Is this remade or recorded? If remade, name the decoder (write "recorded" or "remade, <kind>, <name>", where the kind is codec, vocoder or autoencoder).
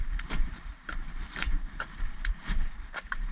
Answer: remade, vocoder, BigVGAN v2